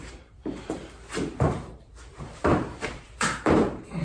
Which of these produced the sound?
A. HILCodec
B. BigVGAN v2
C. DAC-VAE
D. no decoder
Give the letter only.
B